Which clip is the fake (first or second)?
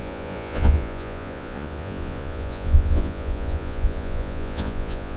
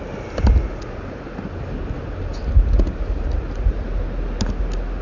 first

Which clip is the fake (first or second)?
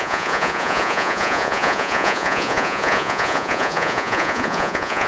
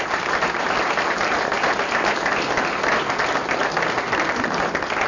first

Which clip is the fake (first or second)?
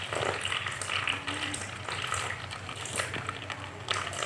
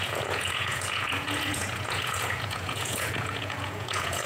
second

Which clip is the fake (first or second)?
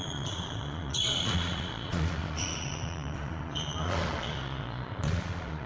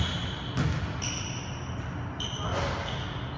first